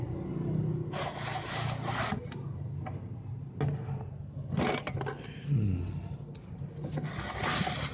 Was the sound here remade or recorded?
recorded